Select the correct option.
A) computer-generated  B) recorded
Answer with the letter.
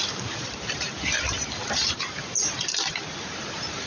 A